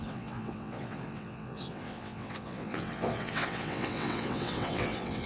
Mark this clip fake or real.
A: fake